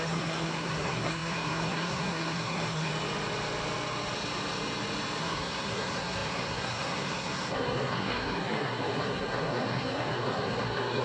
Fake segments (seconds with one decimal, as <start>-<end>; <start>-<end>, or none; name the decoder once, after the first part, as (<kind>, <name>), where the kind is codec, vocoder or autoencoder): 0.0-2.9 (codec, SNAC); 5.2-11.0